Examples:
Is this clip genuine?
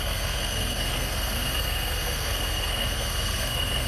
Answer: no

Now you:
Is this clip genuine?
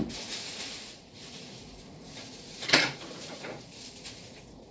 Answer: no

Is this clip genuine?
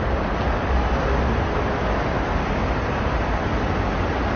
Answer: yes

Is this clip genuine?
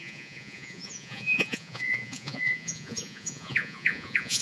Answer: no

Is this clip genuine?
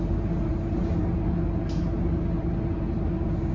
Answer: yes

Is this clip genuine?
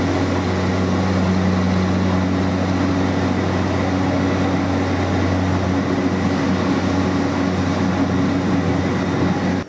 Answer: yes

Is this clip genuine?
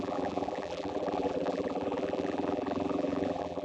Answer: no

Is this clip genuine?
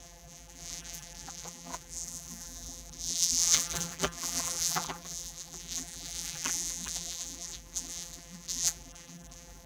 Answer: no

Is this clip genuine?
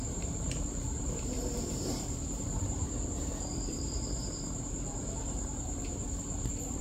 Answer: no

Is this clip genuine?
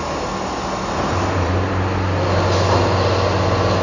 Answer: yes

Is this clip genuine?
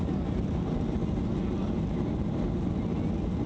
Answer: yes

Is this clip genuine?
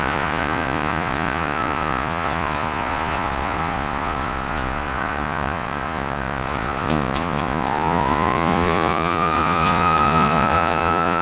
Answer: no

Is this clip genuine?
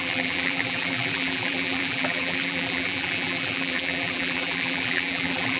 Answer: no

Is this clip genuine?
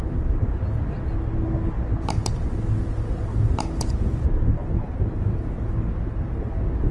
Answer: yes